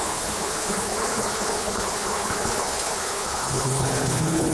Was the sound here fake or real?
fake